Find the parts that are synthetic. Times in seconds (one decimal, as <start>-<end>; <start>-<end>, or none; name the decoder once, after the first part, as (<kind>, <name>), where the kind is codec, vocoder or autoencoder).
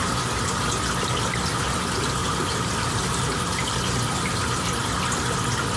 2.2-4.7 (vocoder, BigVGAN v2)